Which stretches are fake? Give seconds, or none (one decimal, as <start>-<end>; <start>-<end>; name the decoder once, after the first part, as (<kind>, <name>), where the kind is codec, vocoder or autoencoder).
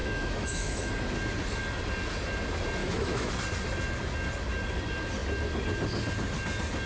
0.0-0.9 (autoencoder, DAC-VAE); 2.8-3.3